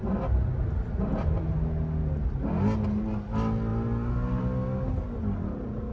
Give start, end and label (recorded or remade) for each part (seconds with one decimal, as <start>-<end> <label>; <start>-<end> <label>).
0.0-5.9 recorded